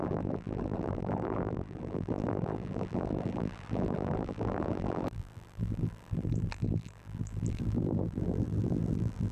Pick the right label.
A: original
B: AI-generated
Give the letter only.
B